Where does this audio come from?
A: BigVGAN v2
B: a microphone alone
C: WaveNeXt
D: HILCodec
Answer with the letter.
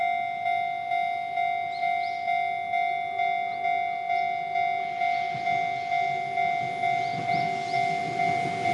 B